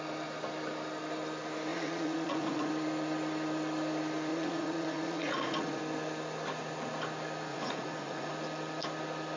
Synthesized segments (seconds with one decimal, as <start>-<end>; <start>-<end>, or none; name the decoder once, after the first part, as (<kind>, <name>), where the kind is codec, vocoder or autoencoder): 1.7-2.7 (vocoder, Vocos); 4.3-5.8; 7.5-8.3